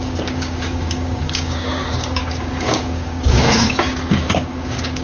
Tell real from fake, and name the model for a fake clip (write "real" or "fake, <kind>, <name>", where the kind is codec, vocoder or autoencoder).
fake, codec, DAC